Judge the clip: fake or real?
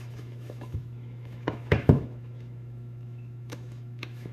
fake